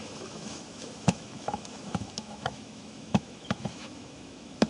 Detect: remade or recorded remade